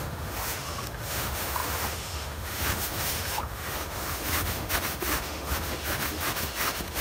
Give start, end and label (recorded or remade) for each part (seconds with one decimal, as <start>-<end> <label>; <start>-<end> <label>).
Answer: 0.0-7.0 remade